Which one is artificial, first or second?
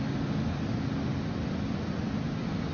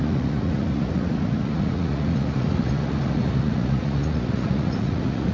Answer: second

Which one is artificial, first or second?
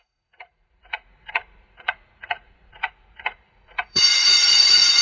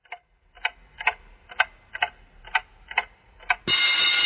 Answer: first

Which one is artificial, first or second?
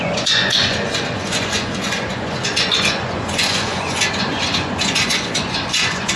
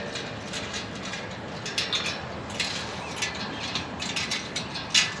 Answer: first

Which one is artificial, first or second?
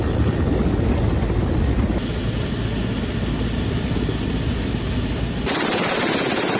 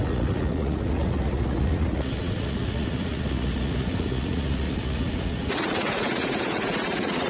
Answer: second